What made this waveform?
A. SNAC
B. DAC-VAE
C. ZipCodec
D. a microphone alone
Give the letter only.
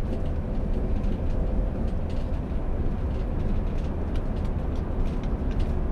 D